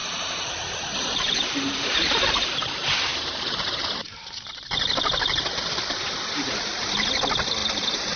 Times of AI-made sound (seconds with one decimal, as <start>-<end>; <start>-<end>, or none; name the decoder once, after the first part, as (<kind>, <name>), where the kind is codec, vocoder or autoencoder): 0.0-2.6 (vocoder, BigVGAN v2); 3.1-3.8; 7.6-8.2